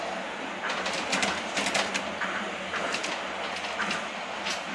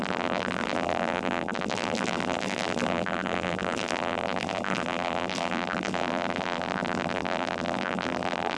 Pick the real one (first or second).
first